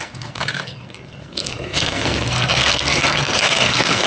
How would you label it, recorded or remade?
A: remade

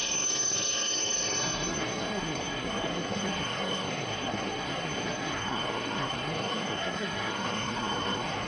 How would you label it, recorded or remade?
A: remade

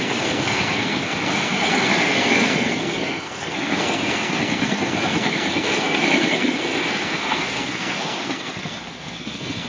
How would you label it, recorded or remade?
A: remade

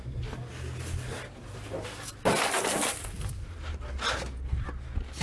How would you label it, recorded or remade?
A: recorded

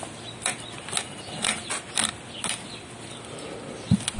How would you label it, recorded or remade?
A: recorded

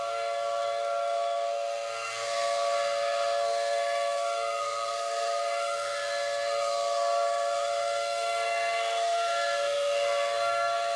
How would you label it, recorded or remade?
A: remade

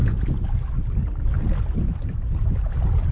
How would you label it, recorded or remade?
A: recorded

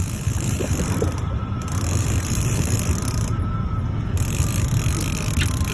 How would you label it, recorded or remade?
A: recorded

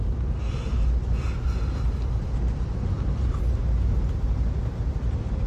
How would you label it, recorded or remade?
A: recorded